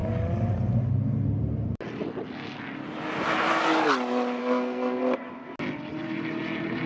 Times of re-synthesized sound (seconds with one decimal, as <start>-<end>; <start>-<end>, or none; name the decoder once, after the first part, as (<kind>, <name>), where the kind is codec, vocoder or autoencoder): 4.4-5.0 (codec, SNAC)